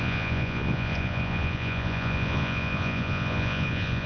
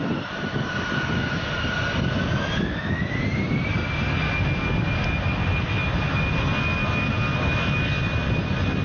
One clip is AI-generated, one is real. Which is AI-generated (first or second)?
first